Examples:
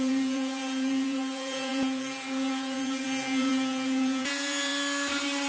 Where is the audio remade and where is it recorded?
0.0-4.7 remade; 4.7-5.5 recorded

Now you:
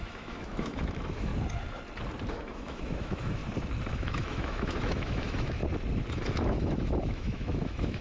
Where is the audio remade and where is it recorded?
0.0-1.3 remade; 1.3-2.3 recorded; 2.3-3.4 remade; 3.4-3.9 recorded; 3.9-5.6 remade; 5.6-6.1 recorded; 6.1-8.0 remade